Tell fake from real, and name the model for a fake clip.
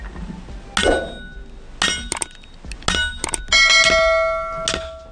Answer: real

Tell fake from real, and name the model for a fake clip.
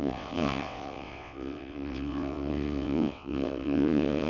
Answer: fake, vocoder, WaveNeXt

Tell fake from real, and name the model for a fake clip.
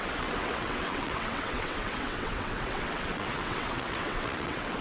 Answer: fake, vocoder, WaveNeXt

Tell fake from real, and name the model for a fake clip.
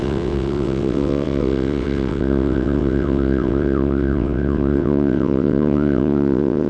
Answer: fake, vocoder, WaveNeXt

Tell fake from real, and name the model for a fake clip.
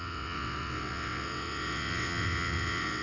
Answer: fake, vocoder, WaveNeXt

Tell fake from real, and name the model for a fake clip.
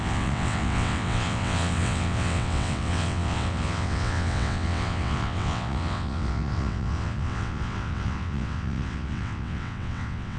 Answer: fake, vocoder, WaveNeXt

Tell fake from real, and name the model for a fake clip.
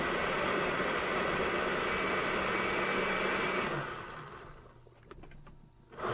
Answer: real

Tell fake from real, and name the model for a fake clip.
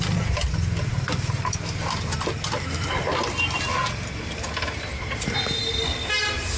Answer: real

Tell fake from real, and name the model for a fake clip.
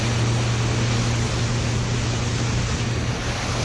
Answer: real